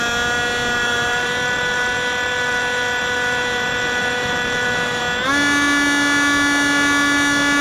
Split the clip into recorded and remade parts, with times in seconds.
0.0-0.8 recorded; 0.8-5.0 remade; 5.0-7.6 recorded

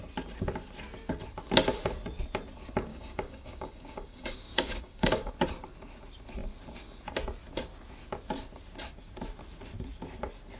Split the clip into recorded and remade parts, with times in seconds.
0.0-2.9 recorded; 2.9-5.3 remade; 5.3-10.6 recorded